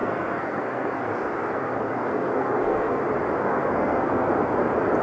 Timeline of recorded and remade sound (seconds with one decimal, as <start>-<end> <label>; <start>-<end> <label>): 0.0-3.0 remade; 3.0-3.4 recorded; 3.4-4.3 remade; 4.3-5.0 recorded